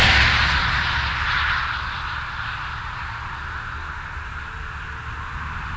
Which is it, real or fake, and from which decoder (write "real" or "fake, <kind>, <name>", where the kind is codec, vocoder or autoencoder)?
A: real